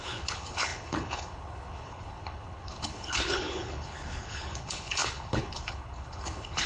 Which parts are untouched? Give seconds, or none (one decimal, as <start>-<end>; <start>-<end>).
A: none